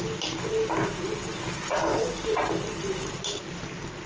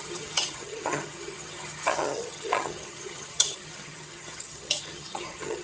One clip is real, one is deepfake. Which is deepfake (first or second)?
second